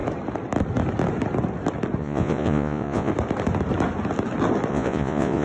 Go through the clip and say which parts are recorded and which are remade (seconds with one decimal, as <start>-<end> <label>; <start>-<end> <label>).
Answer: 0.0-2.0 recorded; 2.0-3.1 remade; 3.1-4.7 recorded; 4.7-5.4 remade